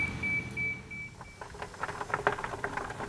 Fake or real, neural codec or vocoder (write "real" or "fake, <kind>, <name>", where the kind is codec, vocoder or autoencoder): real